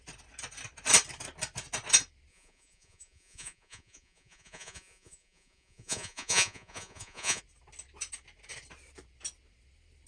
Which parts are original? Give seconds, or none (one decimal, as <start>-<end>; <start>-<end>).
0.0-2.3; 7.4-10.1